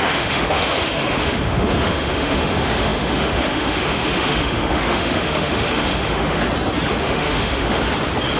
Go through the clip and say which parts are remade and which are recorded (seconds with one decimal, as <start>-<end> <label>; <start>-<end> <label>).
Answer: 0.0-6.4 remade; 6.4-7.0 recorded; 7.0-7.8 remade; 7.8-8.4 recorded